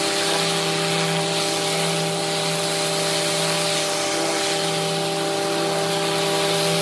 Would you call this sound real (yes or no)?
yes